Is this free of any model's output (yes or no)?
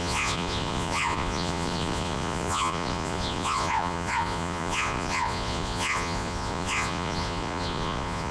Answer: no